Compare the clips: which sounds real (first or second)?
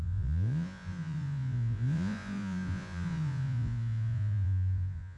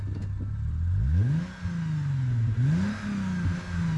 second